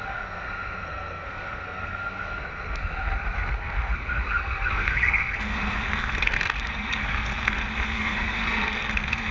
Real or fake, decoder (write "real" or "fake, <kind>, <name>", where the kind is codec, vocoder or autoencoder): fake, codec, SNAC